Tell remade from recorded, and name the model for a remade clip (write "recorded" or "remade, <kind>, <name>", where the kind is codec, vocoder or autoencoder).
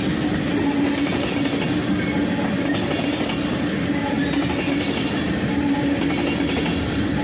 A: recorded